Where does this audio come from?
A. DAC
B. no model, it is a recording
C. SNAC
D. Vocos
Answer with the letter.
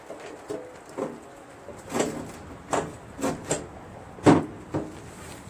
B